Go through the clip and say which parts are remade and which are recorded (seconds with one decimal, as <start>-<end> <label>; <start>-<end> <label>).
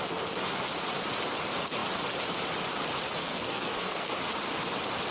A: 0.0-3.2 recorded; 3.2-4.1 remade; 4.1-5.1 recorded